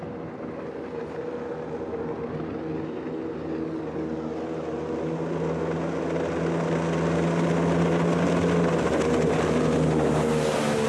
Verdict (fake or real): real